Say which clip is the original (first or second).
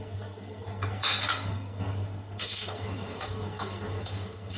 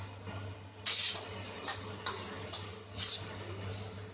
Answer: second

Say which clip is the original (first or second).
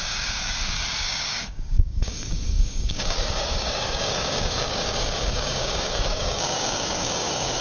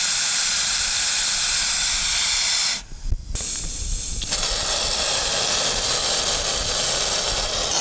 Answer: second